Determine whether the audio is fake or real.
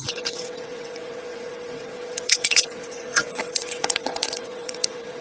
fake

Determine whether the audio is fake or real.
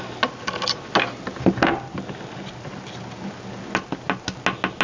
real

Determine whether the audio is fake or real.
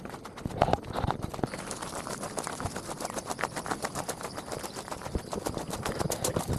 real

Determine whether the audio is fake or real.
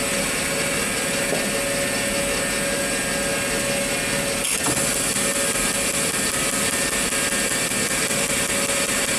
real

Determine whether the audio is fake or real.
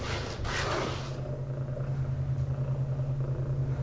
real